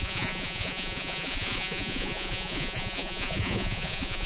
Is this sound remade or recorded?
remade